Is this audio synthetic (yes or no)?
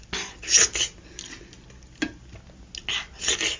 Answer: no